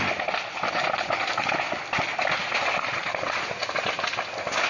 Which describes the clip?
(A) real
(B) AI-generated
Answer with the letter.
B